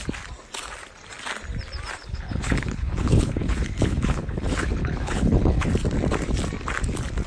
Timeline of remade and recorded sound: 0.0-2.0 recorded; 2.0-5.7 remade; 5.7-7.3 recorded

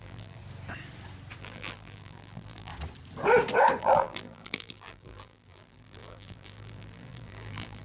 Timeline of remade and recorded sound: 0.0-0.4 remade; 0.4-1.4 recorded; 1.4-2.7 remade; 2.7-3.8 recorded; 3.8-7.8 remade

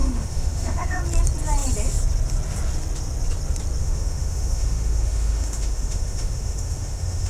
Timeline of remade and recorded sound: 0.0-1.0 remade; 1.0-3.8 recorded; 3.8-7.3 remade

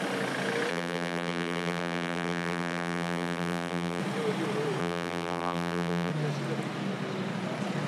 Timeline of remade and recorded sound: 0.0-0.7 recorded; 0.7-4.0 remade; 4.0-4.8 recorded; 4.8-6.1 remade; 6.1-7.9 recorded

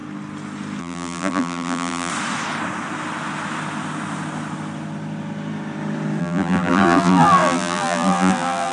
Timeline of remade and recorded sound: 0.0-0.8 recorded; 0.8-2.1 remade; 2.1-6.2 recorded; 6.2-8.7 remade

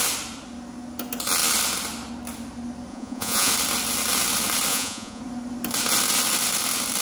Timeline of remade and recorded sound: 0.0-2.9 recorded; 2.9-3.5 remade; 3.5-4.7 recorded; 4.7-5.2 remade; 5.2-7.0 recorded

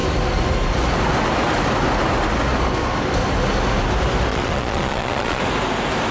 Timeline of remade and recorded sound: 0.0-4.3 recorded; 4.3-5.4 remade; 5.4-6.1 recorded